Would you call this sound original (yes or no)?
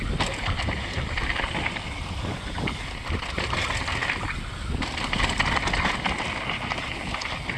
yes